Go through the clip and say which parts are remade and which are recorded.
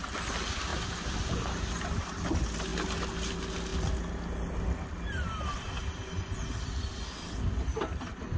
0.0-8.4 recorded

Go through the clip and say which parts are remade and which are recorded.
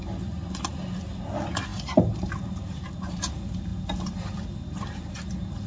0.0-1.7 recorded; 1.7-3.3 remade; 3.3-5.7 recorded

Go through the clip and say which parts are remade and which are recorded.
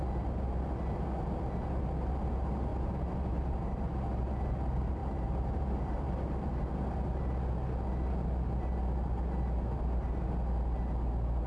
0.0-2.7 recorded; 2.7-3.9 remade; 3.9-5.0 recorded; 5.0-6.7 remade; 6.7-11.5 recorded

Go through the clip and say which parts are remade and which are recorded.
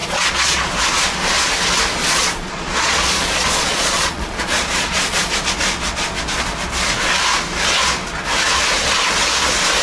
0.0-0.7 remade; 0.7-2.0 recorded; 2.0-5.3 remade; 5.3-9.8 recorded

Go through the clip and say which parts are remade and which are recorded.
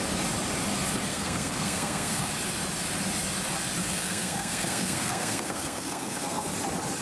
0.0-1.1 recorded; 1.1-2.3 remade; 2.3-3.8 recorded; 3.8-6.5 remade; 6.5-7.0 recorded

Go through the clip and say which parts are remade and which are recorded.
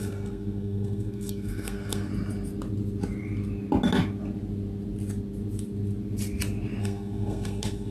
0.0-2.1 remade; 2.1-6.8 recorded; 6.8-7.9 remade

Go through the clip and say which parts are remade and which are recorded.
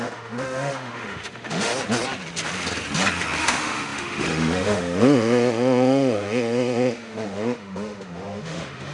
0.0-1.7 remade; 1.7-3.4 recorded; 3.4-8.9 remade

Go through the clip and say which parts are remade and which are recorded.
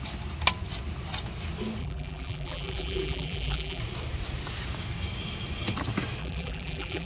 0.0-1.8 recorded; 1.8-3.8 remade; 3.8-6.2 recorded; 6.2-7.1 remade